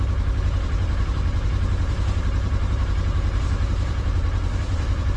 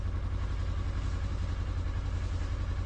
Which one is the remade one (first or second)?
first